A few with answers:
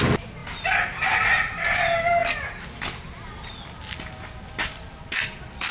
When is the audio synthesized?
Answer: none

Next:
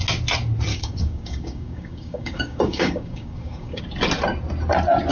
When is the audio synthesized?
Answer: 0.7-3.8 (codec, DAC)